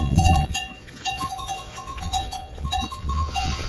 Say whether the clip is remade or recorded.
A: remade